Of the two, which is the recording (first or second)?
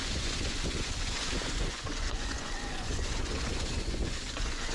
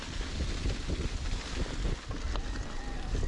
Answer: second